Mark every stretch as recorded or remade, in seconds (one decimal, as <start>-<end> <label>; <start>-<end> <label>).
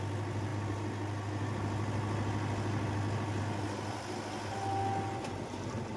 0.0-6.0 recorded